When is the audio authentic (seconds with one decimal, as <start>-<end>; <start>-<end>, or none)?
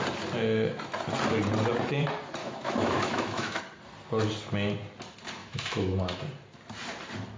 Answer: 0.0-2.4; 3.6-5.4; 6.2-7.4